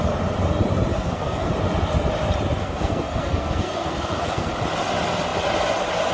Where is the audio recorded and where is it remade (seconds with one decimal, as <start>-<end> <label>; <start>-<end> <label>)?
0.0-0.9 recorded; 0.9-1.5 remade; 1.5-2.6 recorded; 2.6-4.5 remade; 4.5-6.1 recorded